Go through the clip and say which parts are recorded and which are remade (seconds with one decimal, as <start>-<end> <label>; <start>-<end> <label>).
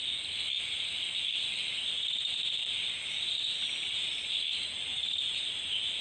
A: 0.0-1.6 recorded; 1.6-4.2 remade; 4.2-4.9 recorded; 4.9-5.5 remade; 5.5-6.0 recorded